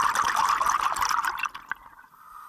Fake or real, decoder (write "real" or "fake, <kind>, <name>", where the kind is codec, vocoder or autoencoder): real